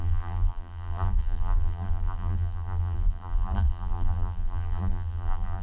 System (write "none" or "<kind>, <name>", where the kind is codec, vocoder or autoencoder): vocoder, BigVGAN v2